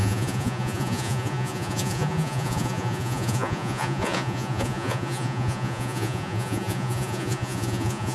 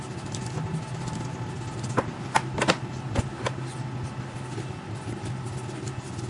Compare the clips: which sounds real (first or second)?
second